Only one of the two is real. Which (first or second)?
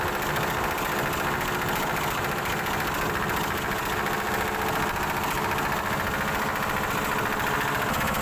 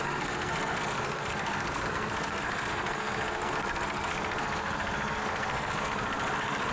first